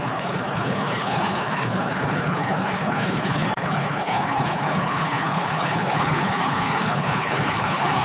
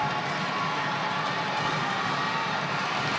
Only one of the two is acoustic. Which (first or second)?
second